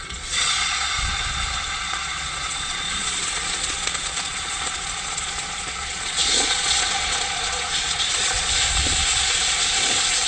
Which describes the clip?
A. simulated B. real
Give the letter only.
A